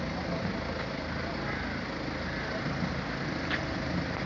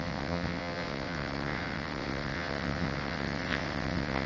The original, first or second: first